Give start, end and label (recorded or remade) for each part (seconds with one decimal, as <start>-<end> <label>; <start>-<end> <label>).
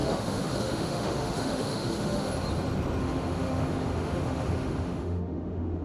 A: 0.0-2.3 remade; 2.3-3.0 recorded; 3.0-5.8 remade